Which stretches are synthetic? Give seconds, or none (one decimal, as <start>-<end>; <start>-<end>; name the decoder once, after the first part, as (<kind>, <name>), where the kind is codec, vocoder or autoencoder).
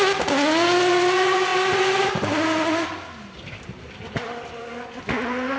none